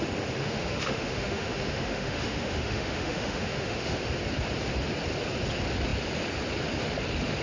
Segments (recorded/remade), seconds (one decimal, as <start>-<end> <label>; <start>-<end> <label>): 0.0-0.4 recorded; 0.4-4.1 remade; 4.1-7.4 recorded